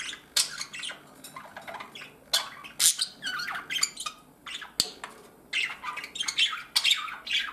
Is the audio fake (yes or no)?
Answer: no